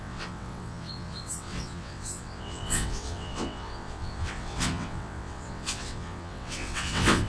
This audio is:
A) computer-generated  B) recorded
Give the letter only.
A